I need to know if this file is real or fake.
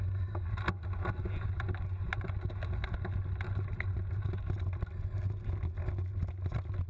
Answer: real